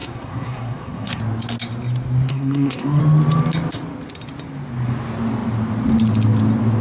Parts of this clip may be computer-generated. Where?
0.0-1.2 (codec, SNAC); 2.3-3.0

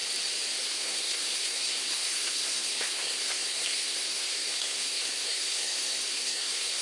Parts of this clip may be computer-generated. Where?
0.6-6.8 (codec, SNAC)

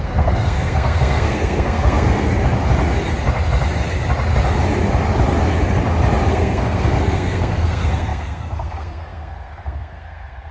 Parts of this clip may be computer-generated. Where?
0.0-2.4 (codec, SNAC); 6.3-10.5

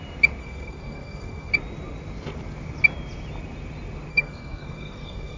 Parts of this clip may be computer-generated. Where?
0.4-1.5 (codec, SNAC); 4.1-5.4